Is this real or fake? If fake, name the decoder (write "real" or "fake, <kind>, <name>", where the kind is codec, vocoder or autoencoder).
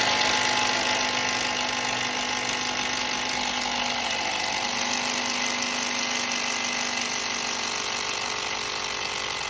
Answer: real